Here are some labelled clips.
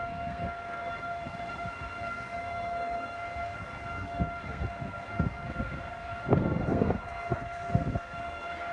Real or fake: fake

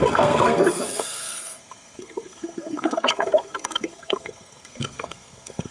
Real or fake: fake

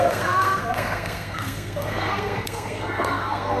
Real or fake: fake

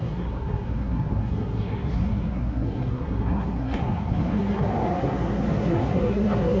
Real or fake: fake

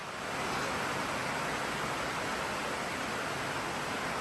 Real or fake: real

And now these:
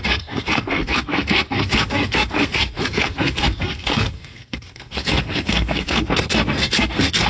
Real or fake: fake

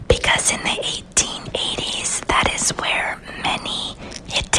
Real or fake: real